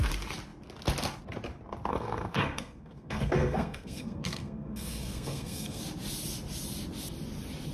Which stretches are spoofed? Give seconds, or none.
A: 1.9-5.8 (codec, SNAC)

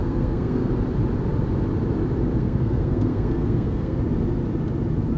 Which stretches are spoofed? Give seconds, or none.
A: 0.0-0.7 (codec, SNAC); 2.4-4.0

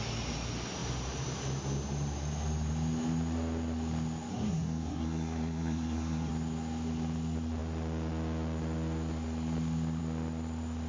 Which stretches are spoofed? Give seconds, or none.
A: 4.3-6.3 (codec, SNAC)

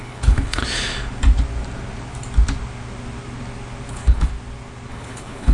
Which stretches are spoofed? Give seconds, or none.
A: 0.0-0.6 (codec, HILCodec); 3.9-4.3; 4.9-5.5

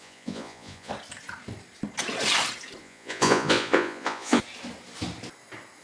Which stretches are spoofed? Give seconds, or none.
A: 0.0-0.9 (vocoder, Vocos); 2.8-4.4